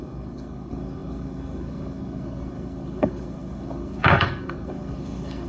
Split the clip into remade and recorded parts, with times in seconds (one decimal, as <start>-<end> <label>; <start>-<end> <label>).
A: 0.0-5.5 remade